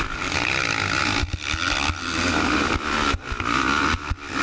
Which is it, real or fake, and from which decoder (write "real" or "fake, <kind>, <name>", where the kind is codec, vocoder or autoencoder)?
real